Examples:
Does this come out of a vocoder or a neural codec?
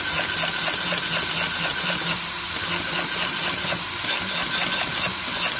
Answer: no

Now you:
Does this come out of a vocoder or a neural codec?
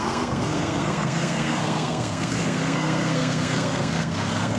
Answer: yes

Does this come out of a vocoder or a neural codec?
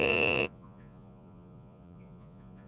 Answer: yes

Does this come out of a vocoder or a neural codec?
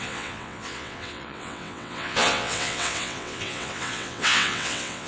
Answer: yes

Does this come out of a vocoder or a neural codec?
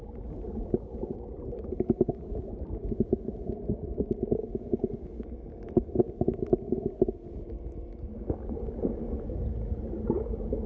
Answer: no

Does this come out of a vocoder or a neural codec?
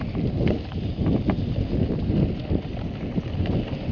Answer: no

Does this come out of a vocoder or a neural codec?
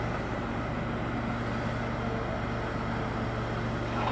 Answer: no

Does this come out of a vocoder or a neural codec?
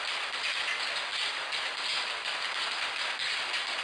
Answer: no